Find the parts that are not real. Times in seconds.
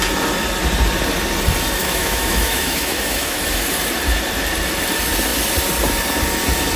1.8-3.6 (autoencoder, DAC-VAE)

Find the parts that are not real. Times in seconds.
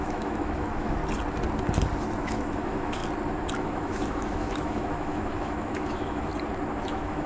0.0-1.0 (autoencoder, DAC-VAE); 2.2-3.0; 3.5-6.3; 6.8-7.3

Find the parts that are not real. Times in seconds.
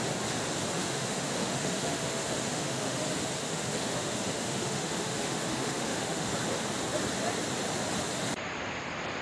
0.7-3.0 (autoencoder, DAC-VAE); 3.4-6.3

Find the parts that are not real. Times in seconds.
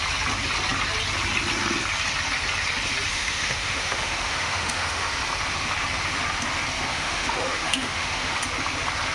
3.1-5.1 (autoencoder, DAC-VAE); 6.9-8.4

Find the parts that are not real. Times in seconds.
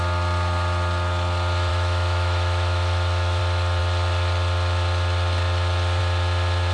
1.7-3.4 (autoencoder, DAC-VAE)